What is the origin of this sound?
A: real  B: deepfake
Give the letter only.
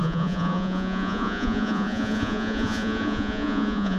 B